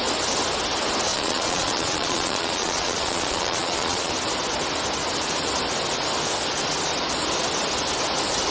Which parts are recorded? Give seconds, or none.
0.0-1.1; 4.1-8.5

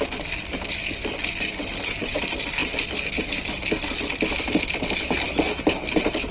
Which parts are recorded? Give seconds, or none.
0.0-6.3

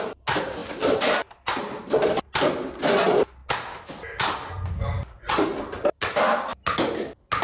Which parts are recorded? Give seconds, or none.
0.0-7.4

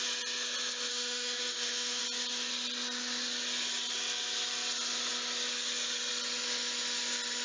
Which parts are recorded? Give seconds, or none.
0.0-0.9; 2.0-7.4